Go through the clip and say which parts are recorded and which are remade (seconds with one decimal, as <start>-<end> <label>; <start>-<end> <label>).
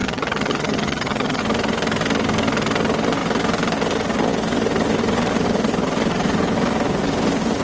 0.0-1.4 remade; 1.4-7.6 recorded